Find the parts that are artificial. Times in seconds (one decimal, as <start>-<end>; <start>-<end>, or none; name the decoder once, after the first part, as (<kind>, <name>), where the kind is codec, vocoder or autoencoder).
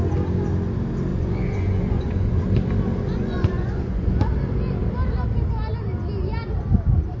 1.1-2.4 (vocoder, Vocos); 3.1-4.1